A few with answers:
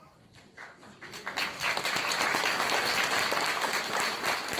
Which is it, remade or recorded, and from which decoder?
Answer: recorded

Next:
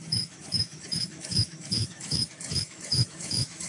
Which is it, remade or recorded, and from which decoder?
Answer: remade, autoencoder, DAC-VAE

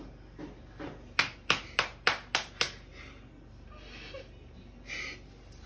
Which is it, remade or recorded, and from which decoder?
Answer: recorded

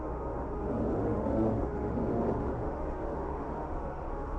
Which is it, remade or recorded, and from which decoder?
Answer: remade, autoencoder, DAC-VAE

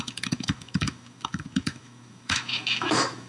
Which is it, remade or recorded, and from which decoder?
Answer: remade, autoencoder, DAC-VAE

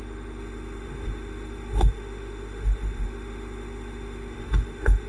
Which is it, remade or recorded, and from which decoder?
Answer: remade, autoencoder, DAC-VAE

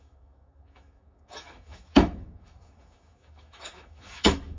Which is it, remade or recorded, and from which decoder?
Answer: remade, autoencoder, DAC-VAE